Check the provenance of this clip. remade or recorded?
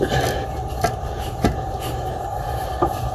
recorded